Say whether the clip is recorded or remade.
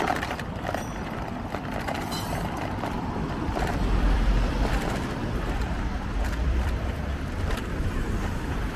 remade